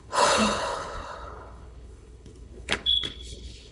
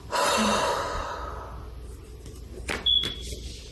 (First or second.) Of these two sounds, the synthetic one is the first